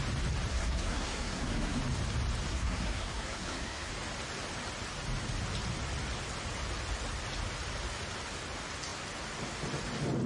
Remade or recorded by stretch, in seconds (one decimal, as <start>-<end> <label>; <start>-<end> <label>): 0.0-0.5 recorded; 0.5-1.8 remade; 1.8-2.5 recorded; 2.5-3.9 remade; 3.9-10.3 recorded